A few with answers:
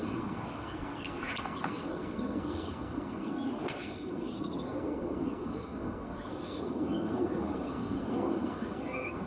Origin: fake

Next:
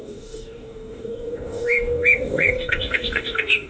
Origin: fake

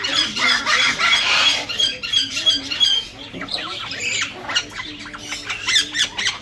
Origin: fake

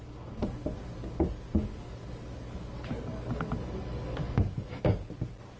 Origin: real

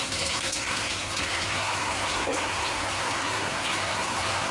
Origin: fake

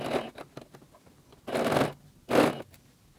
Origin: real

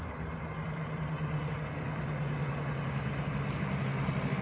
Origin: real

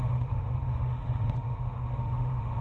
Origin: fake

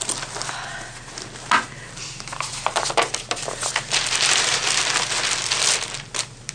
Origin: real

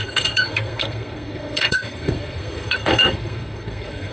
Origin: fake